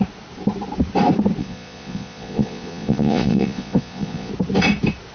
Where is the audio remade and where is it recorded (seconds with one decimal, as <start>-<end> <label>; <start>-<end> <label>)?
0.0-1.4 recorded; 1.4-4.3 remade; 4.3-5.1 recorded